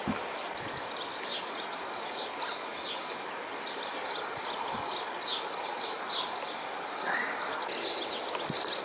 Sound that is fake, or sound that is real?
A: real